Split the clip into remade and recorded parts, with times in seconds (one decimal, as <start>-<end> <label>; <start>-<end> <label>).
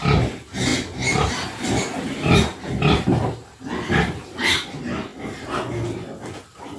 0.0-2.5 recorded; 2.5-4.4 remade; 4.4-6.8 recorded